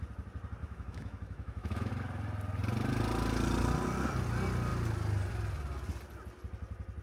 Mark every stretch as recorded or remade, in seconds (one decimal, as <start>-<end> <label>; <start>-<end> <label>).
0.0-0.6 recorded; 0.6-1.9 remade; 1.9-7.0 recorded